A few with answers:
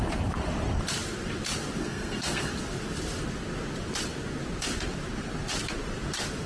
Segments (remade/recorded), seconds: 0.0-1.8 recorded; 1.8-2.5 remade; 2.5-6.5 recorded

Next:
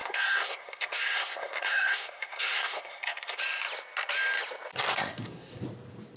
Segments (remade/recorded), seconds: 0.0-3.4 remade; 3.4-4.9 recorded; 4.9-5.6 remade; 5.6-6.2 recorded

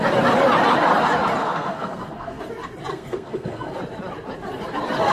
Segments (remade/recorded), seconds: 0.0-1.4 recorded; 1.4-2.4 remade; 2.4-2.9 recorded; 2.9-3.8 remade; 3.8-5.1 recorded

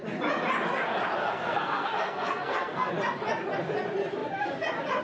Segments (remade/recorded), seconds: 0.0-1.2 recorded; 1.2-2.9 remade; 2.9-5.0 recorded

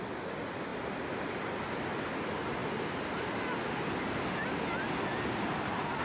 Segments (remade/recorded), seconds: 0.0-6.0 recorded

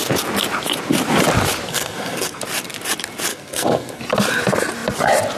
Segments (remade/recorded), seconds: 0.0-1.7 recorded; 1.7-2.4 remade; 2.4-3.3 recorded; 3.3-4.0 remade; 4.0-5.4 recorded

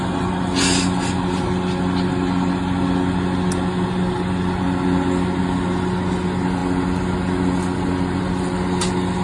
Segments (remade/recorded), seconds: 0.0-9.2 recorded

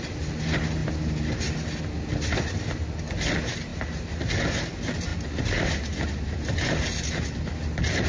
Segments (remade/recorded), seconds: 0.0-8.1 recorded